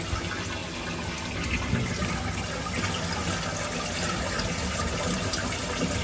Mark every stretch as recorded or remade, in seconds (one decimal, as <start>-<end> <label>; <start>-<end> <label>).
0.0-6.0 recorded